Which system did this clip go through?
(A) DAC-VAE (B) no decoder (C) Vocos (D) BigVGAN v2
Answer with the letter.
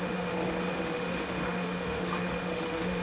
A